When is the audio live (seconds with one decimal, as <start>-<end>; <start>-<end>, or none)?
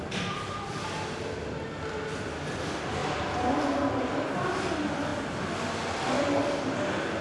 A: 0.0-7.2